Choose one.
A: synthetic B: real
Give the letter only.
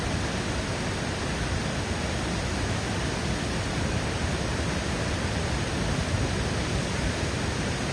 B